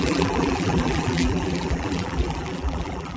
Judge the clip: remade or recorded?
remade